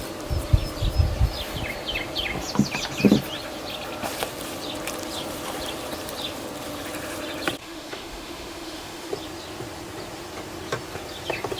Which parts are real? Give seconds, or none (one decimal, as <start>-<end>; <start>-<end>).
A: 0.0-7.6; 9.1-11.6